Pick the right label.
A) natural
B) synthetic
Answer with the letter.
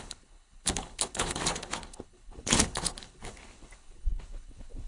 B